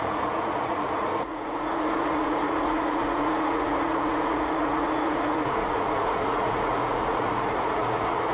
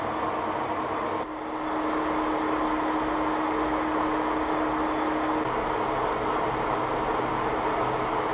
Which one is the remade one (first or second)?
first